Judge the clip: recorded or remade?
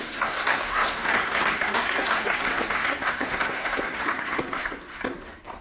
remade